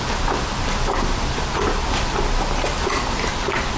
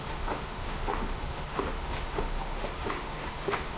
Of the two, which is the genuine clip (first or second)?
first